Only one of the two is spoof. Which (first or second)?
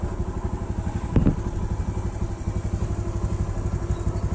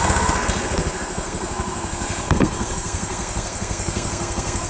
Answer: second